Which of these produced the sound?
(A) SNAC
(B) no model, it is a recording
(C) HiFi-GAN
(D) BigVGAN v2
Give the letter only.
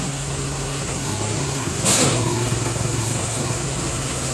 A